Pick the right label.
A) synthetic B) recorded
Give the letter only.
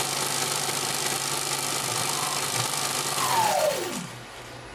B